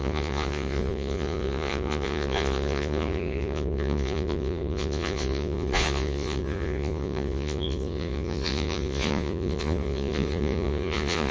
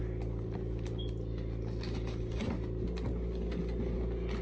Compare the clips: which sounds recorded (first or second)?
second